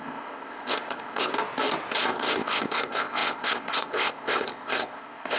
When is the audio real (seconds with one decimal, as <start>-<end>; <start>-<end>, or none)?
1.3-2.0